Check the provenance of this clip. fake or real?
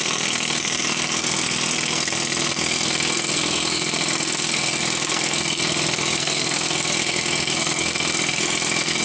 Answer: fake